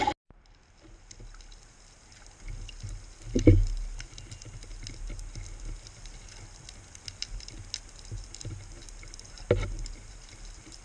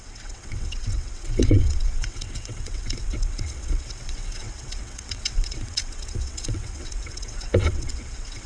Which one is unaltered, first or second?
first